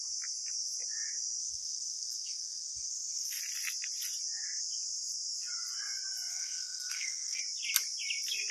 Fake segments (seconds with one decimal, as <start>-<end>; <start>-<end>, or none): 1.4-3.4; 6.3-7.4